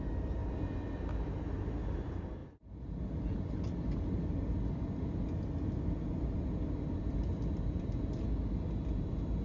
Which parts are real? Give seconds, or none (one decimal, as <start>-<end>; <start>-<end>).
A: 0.0-9.4